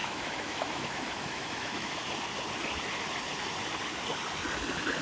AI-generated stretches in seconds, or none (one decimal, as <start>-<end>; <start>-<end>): 0.0-2.0